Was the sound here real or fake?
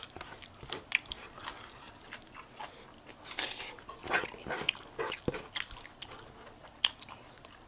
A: real